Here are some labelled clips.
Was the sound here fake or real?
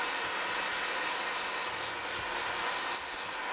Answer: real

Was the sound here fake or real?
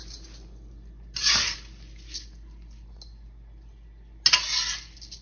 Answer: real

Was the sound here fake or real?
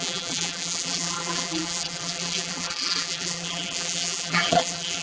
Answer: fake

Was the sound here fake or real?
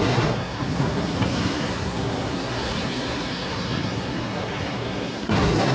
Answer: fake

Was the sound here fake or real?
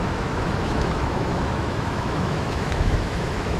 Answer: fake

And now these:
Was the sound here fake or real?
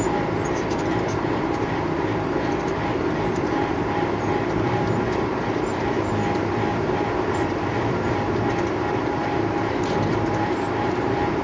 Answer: fake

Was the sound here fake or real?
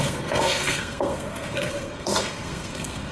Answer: fake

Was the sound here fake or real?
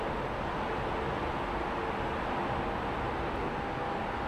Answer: real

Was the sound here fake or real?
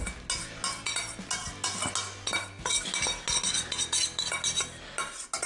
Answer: real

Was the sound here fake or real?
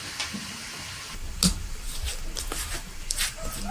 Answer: real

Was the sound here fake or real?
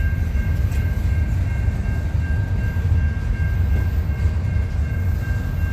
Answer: real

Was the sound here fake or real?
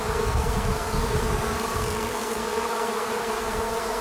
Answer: fake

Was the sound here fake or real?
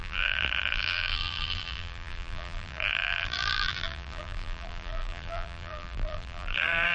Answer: fake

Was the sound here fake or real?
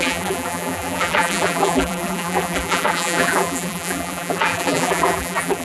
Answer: fake